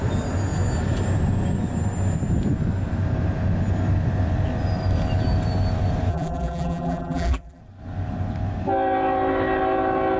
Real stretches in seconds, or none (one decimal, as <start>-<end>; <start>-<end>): 0.0-6.1; 7.6-10.2